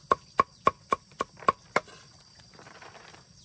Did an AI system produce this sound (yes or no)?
no